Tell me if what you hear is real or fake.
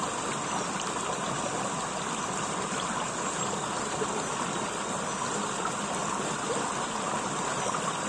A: real